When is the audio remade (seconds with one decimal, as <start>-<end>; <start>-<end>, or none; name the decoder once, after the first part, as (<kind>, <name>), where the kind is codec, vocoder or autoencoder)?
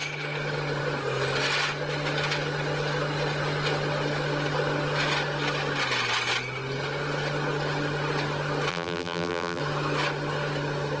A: 8.7-9.6 (vocoder, BigVGAN v2)